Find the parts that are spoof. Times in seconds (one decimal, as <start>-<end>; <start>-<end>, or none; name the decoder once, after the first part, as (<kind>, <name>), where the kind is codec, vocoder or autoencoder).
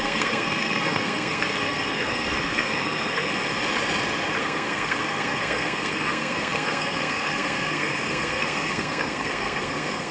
0.0-3.3 (codec, SNAC); 4.4-10.1